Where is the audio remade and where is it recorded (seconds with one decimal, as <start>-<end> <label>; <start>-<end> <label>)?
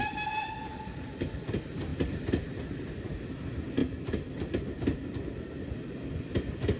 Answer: 0.0-1.9 recorded; 1.9-2.6 remade; 2.6-6.8 recorded